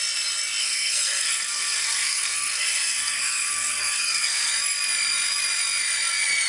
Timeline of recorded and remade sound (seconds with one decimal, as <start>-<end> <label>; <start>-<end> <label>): 0.0-0.6 recorded; 0.6-4.5 remade; 4.5-6.5 recorded